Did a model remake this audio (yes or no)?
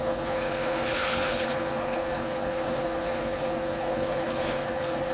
yes